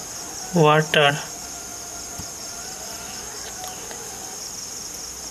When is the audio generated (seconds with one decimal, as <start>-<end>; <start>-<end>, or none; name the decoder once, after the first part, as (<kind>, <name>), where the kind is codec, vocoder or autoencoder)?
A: none